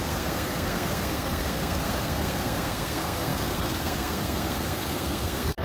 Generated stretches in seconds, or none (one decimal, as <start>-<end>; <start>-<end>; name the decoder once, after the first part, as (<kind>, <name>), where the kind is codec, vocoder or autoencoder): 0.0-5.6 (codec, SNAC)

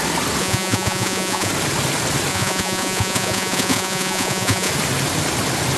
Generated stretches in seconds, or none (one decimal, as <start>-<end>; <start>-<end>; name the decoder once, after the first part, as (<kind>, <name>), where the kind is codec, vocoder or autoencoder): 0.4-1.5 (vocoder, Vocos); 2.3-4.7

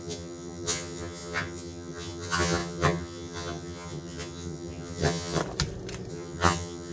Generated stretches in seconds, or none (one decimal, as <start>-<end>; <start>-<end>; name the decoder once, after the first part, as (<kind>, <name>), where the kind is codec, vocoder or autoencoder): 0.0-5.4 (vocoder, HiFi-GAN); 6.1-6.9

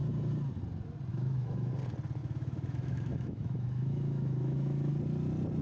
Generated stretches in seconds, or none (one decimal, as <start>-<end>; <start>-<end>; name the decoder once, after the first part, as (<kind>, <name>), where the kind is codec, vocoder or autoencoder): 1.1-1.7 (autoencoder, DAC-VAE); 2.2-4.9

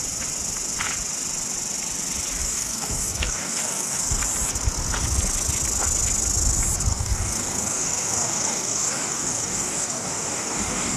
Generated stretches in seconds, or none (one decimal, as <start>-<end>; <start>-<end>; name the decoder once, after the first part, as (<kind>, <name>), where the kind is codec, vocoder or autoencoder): 2.4-4.2 (codec, DAC); 6.9-11.0

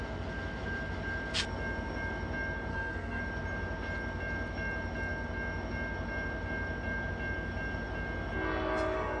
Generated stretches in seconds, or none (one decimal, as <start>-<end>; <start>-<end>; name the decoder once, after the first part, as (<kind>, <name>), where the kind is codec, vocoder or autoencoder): 2.7-3.2 (codec, SNAC)

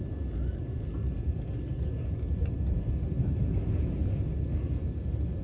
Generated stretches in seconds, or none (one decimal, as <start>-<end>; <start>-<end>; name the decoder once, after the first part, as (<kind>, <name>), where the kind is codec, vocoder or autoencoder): none